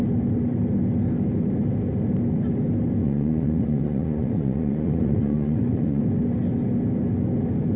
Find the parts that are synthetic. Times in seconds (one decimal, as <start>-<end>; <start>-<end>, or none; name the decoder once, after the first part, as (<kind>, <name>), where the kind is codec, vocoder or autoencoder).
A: 3.0-6.0 (vocoder, Vocos)